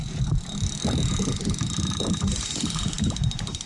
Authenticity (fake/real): real